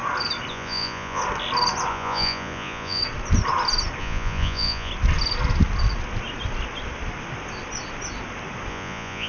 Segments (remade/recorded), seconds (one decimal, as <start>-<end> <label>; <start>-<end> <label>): 0.0-0.5 recorded; 0.5-1.2 remade; 1.2-1.9 recorded; 1.9-3.0 remade; 3.0-4.0 recorded; 4.0-4.9 remade; 4.9-8.7 recorded; 8.7-9.3 remade